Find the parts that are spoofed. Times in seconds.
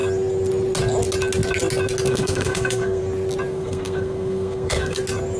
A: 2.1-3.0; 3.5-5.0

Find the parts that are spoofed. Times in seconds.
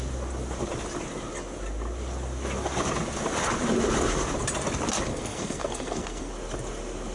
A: 5.1-6.3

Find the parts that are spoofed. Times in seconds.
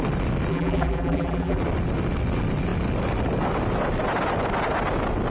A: 0.5-1.6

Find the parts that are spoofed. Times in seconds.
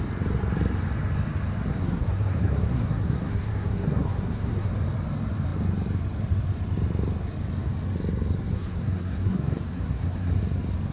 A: 1.7-4.7; 8.5-10.4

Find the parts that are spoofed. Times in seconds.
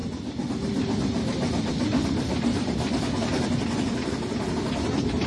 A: none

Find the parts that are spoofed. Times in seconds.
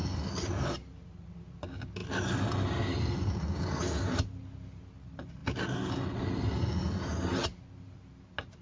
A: none